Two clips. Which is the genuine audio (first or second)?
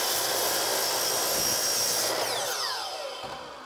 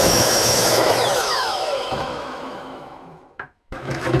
first